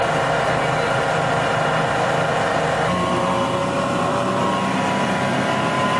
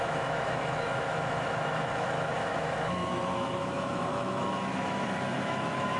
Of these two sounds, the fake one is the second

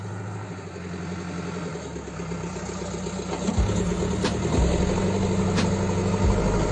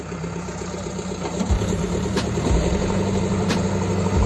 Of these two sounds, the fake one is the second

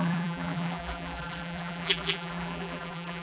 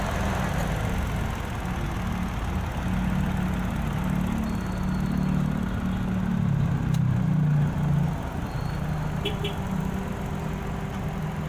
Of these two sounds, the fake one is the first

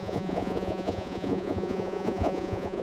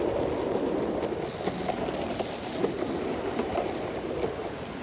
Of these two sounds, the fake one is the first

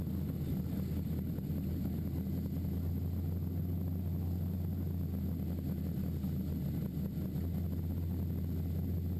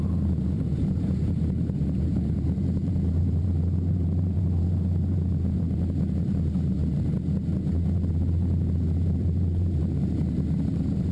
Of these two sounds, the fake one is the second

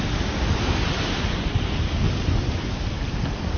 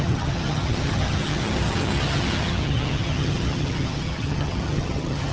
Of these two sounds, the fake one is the second